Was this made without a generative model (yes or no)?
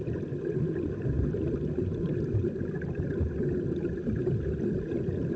yes